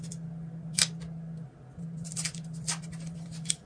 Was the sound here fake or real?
real